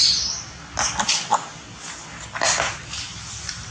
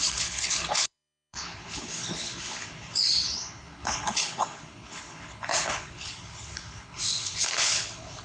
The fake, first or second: second